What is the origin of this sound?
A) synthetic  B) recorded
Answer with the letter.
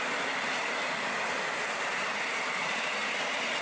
B